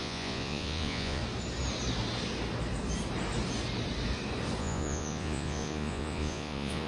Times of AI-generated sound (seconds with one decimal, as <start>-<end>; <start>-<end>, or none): 0.0-1.2; 4.6-6.9